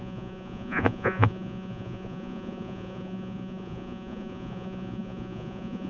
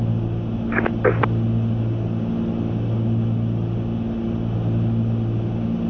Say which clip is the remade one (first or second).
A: first